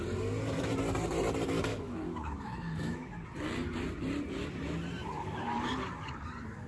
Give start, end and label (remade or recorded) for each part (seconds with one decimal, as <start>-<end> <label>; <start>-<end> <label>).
0.0-1.7 recorded; 1.7-3.1 remade; 3.1-6.7 recorded